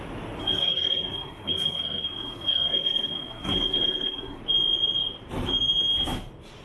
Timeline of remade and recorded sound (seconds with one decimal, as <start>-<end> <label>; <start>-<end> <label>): 0.0-0.4 recorded; 0.4-4.4 remade; 4.4-6.6 recorded